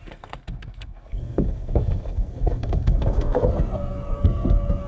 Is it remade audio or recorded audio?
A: remade